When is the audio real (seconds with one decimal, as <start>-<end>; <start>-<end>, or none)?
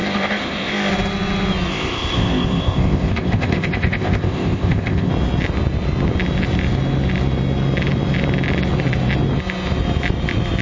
0.9-1.7; 5.1-10.6